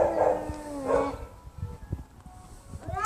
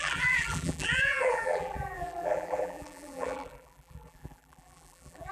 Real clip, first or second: first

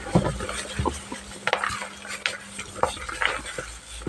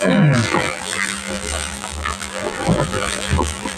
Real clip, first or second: first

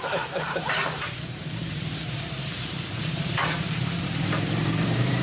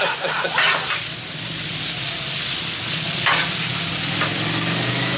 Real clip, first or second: second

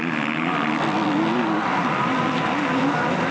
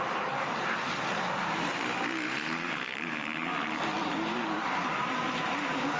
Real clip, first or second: first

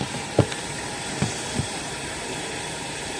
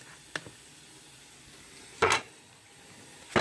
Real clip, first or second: second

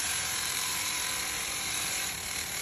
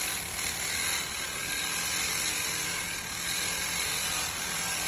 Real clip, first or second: second